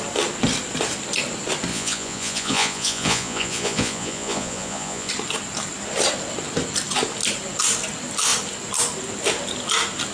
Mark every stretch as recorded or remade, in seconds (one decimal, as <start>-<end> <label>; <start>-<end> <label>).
0.0-1.7 recorded; 1.7-5.1 remade; 5.1-10.1 recorded